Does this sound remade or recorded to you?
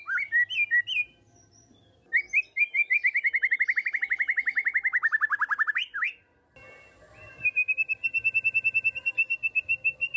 recorded